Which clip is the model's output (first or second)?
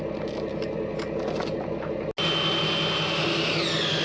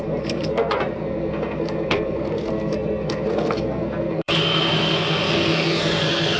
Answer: second